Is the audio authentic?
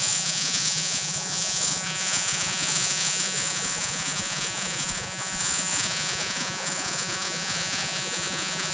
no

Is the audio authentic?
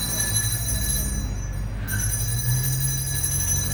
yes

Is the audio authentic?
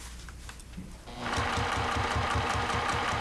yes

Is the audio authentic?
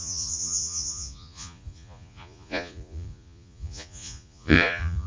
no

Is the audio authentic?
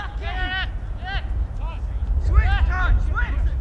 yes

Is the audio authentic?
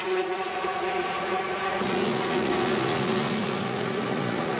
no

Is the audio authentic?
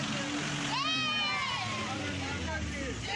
yes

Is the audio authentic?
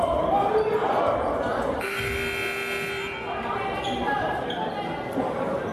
yes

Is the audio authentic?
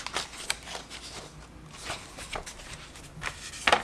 yes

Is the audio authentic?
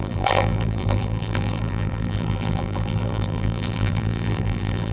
no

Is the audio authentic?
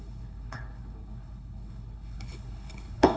no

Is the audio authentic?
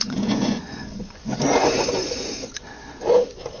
no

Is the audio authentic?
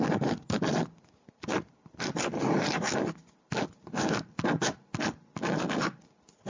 yes